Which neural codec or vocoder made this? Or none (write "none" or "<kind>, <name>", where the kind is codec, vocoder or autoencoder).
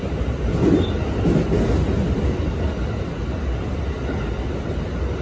none